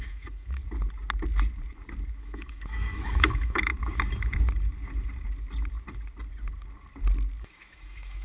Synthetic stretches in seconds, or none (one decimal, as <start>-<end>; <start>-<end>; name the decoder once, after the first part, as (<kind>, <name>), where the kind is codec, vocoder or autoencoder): 0.0-0.6 (autoencoder, DAC-VAE); 2.2-3.7; 7.4-8.2